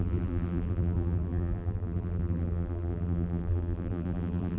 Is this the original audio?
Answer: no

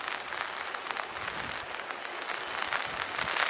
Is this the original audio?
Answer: yes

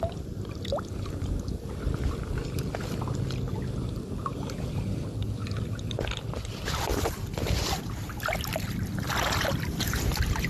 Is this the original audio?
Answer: yes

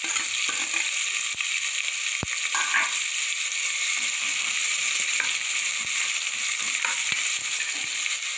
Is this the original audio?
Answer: yes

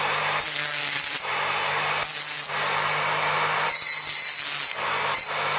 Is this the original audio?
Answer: yes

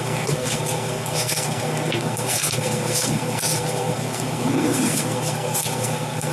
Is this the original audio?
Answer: no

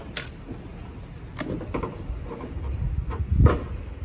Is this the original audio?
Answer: yes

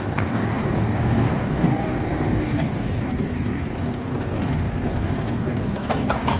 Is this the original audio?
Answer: no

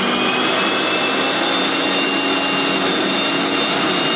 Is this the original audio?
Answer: yes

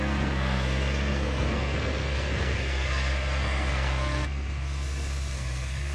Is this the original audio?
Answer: no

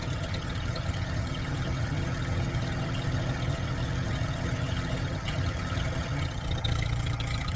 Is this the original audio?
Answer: no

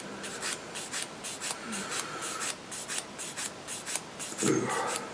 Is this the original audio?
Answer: yes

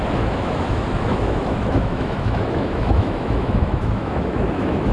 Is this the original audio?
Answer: no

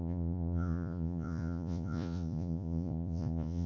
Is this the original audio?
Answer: no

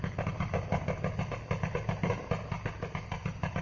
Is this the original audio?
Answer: yes